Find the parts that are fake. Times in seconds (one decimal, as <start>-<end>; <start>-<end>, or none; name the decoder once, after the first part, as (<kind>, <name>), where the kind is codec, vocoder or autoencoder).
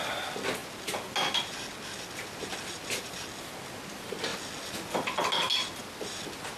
none